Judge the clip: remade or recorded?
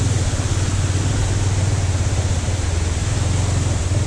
recorded